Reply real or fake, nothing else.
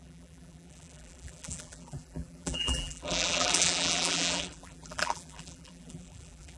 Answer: fake